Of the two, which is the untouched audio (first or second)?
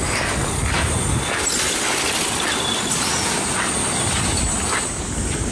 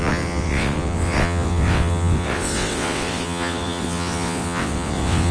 first